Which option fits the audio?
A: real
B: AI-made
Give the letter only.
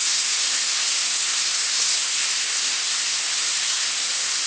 B